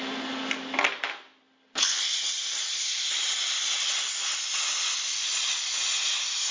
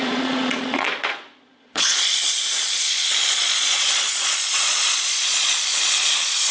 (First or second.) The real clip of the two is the first